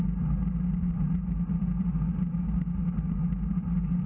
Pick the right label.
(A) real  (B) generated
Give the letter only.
A